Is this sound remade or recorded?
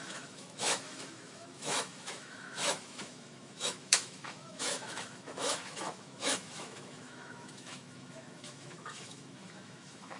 remade